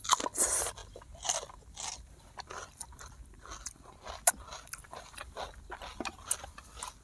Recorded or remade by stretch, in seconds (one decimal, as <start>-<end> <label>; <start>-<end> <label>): 0.0-7.0 recorded